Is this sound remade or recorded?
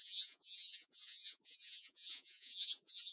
remade